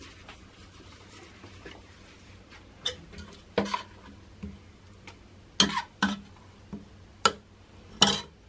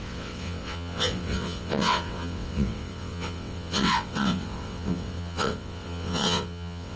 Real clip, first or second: first